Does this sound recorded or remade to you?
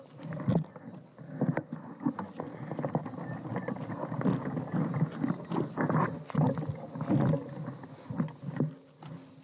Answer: recorded